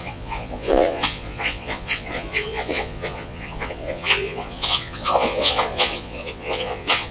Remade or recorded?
remade